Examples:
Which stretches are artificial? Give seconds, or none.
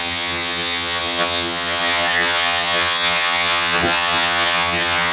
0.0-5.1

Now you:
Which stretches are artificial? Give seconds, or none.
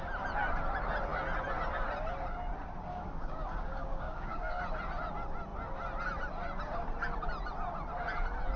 2.9-4.6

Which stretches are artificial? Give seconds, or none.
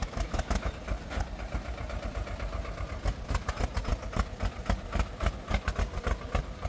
0.0-0.7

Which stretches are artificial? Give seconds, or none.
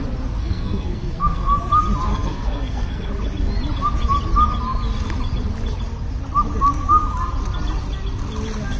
0.4-1.6; 2.1-3.1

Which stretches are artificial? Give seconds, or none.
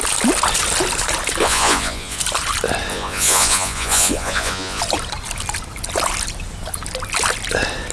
1.4-2.2; 2.9-4.8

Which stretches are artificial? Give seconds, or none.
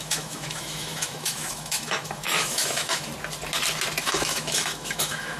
0.0-3.1; 4.0-5.4